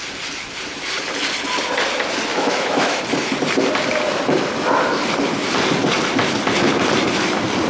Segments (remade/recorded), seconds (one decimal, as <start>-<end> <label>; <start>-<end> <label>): 0.0-2.3 recorded; 2.3-3.0 remade; 3.0-7.7 recorded